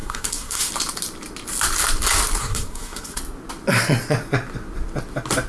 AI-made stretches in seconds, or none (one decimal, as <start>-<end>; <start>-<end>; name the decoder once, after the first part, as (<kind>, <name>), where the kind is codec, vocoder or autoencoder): 0.0-0.7 (codec, SNAC); 2.4-3.2